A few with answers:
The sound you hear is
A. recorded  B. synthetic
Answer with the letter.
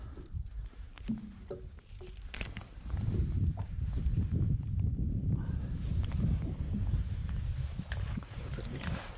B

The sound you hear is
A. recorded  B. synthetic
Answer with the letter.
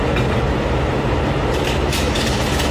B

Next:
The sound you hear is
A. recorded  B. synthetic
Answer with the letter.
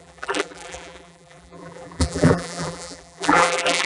B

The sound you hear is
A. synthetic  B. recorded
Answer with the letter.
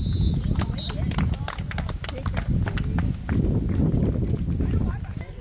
B